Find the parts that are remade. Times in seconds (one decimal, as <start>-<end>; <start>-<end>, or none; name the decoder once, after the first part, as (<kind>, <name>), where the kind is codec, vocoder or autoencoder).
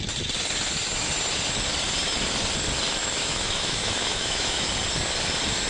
3.0-4.7 (autoencoder, DAC-VAE)